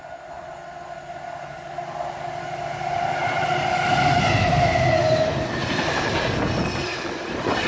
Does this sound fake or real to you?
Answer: real